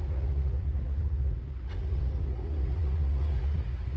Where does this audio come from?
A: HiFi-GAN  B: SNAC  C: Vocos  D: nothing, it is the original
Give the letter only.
C